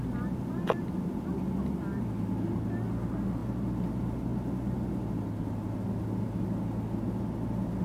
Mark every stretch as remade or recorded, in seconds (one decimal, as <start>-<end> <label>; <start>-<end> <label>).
0.0-7.8 recorded